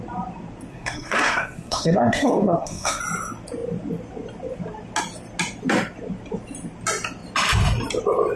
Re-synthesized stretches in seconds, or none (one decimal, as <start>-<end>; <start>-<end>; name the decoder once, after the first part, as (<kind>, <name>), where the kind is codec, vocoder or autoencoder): 0.7-3.0 (codec, SNAC)